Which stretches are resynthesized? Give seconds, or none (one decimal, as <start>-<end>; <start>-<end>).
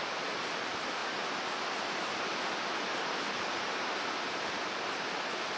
none